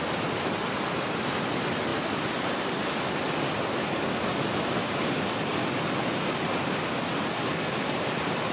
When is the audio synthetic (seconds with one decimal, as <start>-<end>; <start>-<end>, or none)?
none